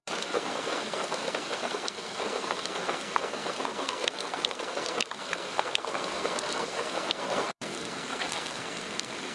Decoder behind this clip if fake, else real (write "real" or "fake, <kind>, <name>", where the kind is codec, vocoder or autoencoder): fake, codec, SNAC